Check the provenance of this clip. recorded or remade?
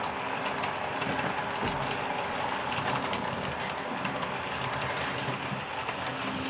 recorded